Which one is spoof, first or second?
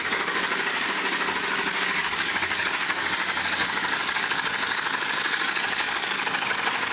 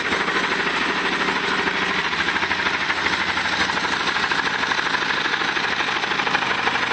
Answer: first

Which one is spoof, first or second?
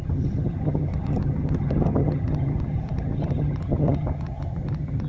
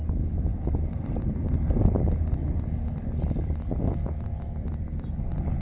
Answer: first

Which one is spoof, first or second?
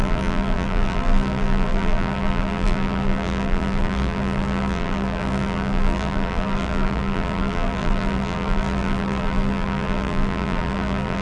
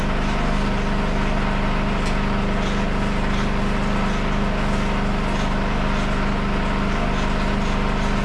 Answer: first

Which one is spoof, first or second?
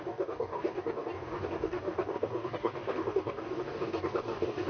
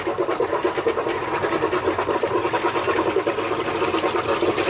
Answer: first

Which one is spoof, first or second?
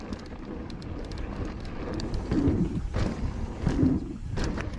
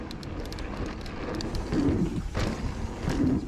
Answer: first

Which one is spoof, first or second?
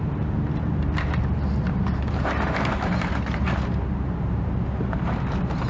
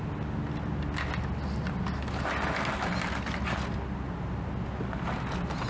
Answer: first